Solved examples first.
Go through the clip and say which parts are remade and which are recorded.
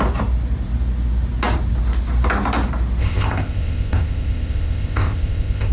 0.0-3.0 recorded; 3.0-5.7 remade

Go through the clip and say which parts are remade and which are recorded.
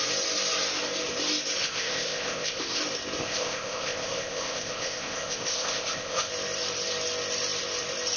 0.0-1.6 recorded; 1.6-2.8 remade; 2.8-3.2 recorded; 3.2-6.3 remade; 6.3-8.2 recorded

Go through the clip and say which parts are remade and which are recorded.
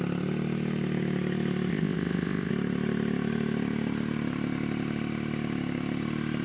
0.0-1.7 recorded; 1.7-2.5 remade; 2.5-6.4 recorded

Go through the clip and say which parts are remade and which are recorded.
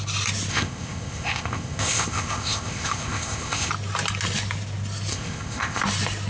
0.0-0.5 recorded; 0.5-3.7 remade; 3.7-5.1 recorded; 5.1-5.8 remade; 5.8-6.3 recorded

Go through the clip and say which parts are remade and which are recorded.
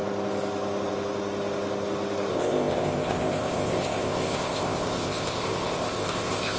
0.0-2.3 recorded; 2.3-6.6 remade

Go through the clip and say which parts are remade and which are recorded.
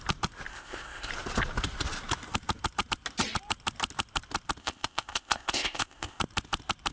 0.0-0.5 recorded; 0.5-1.1 remade; 1.1-4.6 recorded; 4.6-6.2 remade; 6.2-6.9 recorded